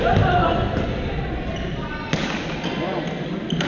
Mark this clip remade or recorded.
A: recorded